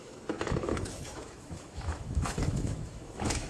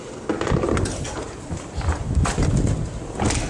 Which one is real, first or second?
second